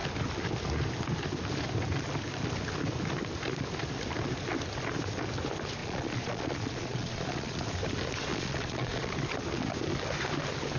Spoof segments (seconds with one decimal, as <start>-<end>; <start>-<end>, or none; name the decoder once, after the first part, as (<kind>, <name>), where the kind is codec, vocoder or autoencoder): 5.8-7.7 (vocoder, Vocos); 8.3-9.1